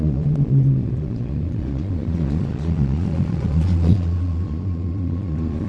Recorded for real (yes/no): no